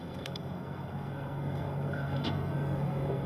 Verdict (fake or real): fake